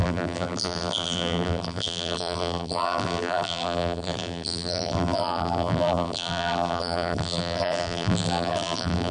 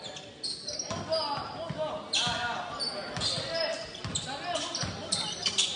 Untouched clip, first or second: second